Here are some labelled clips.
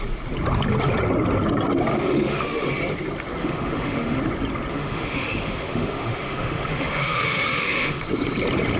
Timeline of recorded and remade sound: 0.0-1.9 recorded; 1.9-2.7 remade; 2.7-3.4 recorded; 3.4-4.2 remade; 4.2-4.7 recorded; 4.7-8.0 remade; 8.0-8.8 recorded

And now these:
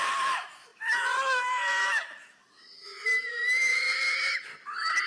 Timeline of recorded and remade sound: 0.0-4.5 remade; 4.5-5.1 recorded

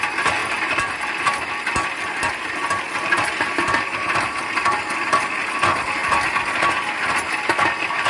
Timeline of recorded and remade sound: 0.0-8.1 recorded

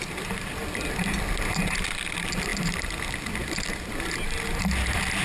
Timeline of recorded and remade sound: 0.0-5.2 recorded

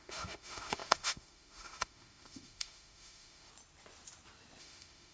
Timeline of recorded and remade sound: 0.0-3.5 remade; 3.5-4.6 recorded; 4.6-5.1 remade

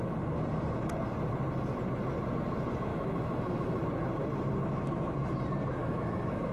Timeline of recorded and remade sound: 0.0-2.9 recorded; 2.9-3.8 remade; 3.8-5.8 recorded; 5.8-6.5 remade

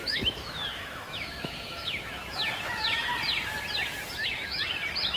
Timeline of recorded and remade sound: 0.0-3.1 remade; 3.1-4.2 recorded; 4.2-4.7 remade; 4.7-5.2 recorded

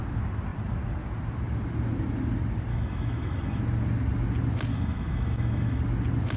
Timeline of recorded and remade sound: 0.0-2.7 recorded; 2.7-3.6 remade; 3.6-4.7 recorded; 4.7-5.8 remade; 5.8-6.4 recorded